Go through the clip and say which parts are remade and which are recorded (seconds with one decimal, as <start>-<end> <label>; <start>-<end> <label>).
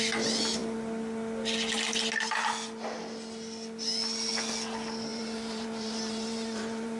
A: 0.0-5.1 recorded; 5.1-7.0 remade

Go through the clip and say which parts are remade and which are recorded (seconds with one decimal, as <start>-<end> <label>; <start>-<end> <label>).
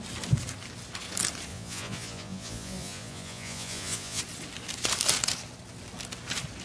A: 0.0-1.5 recorded; 1.5-4.2 remade; 4.2-6.6 recorded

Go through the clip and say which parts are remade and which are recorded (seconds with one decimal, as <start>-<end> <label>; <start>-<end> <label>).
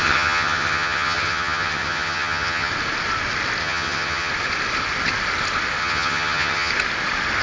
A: 0.0-2.7 remade; 2.7-3.6 recorded; 3.6-4.3 remade; 4.3-5.8 recorded; 5.8-6.7 remade; 6.7-7.4 recorded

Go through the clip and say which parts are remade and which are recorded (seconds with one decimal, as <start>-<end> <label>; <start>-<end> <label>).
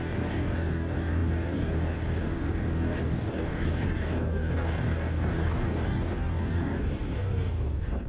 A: 0.0-8.1 remade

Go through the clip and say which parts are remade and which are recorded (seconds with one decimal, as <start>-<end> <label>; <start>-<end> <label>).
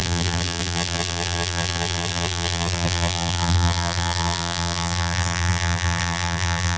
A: 0.0-6.8 remade